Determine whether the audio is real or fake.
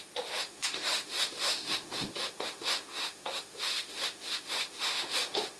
fake